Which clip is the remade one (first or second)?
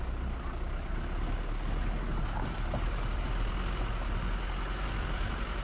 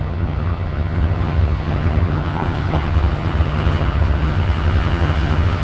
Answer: second